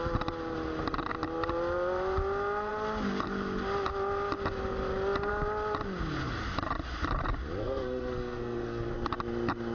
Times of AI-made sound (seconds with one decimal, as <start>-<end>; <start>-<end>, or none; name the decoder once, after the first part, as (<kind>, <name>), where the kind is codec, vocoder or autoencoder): 7.6-8.9 (codec, SNAC)